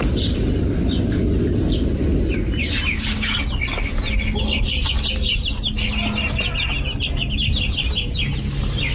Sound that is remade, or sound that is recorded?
recorded